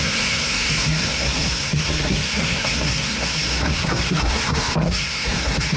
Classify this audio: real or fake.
fake